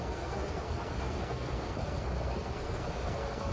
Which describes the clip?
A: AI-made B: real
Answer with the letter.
A